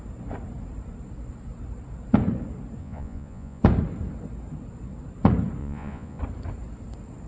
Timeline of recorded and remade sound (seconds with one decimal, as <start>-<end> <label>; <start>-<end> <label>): 0.0-2.8 recorded; 2.8-3.6 remade; 3.6-5.6 recorded; 5.6-6.2 remade; 6.2-7.3 recorded